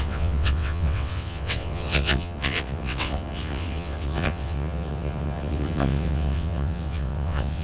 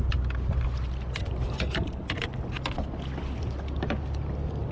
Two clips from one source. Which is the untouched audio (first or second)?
second